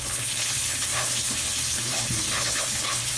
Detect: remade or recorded remade